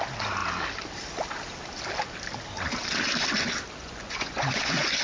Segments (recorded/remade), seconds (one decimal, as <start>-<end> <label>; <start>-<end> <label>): 0.0-3.8 recorded; 3.8-5.0 remade